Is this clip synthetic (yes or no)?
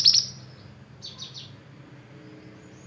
no